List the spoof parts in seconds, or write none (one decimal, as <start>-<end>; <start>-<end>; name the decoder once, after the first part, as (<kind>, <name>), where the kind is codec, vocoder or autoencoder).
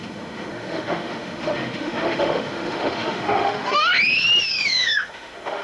0.0-3.9 (autoencoder, DAC-VAE); 4.5-5.6